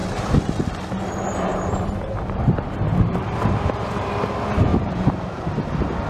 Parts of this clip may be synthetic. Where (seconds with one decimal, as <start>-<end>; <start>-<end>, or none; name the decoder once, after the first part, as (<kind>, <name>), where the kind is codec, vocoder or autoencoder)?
0.0-0.6 (vocoder, BigVGAN v2); 1.5-4.1; 4.7-5.6